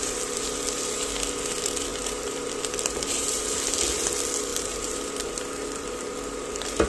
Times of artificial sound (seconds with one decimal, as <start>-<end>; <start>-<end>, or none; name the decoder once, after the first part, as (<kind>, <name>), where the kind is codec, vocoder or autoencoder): 1.9-3.4 (vocoder, BigVGAN v2); 4.5-5.1